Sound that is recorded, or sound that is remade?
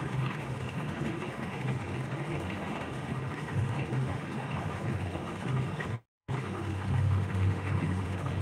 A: remade